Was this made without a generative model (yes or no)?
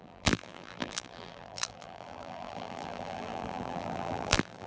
no